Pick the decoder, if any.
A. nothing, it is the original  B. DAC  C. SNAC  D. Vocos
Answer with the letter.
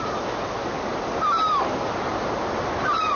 A